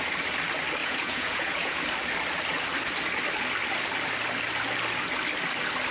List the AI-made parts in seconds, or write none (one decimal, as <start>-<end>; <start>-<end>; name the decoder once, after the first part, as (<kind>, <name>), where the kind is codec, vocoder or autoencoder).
0.8-1.8 (vocoder, Vocos)